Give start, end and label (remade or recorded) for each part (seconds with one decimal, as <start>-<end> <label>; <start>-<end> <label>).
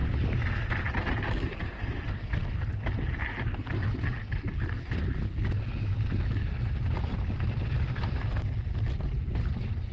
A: 0.0-9.9 recorded